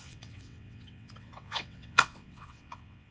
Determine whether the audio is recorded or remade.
remade